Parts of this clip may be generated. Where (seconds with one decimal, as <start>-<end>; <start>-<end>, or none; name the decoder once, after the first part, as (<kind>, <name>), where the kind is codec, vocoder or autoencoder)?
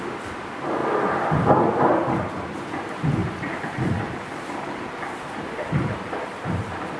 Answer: 0.8-1.9 (vocoder, BigVGAN v2); 3.2-7.0